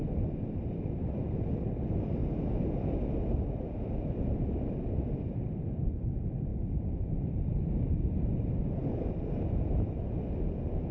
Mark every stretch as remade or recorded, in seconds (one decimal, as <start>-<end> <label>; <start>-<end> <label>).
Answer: 0.0-2.2 remade; 2.2-5.4 recorded; 5.4-6.5 remade; 6.5-7.1 recorded; 7.1-7.5 remade; 7.5-8.3 recorded; 8.3-10.9 remade